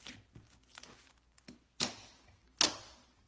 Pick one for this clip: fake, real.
real